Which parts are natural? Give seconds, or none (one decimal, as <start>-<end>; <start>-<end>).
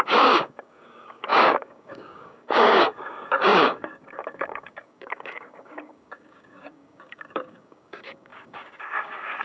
none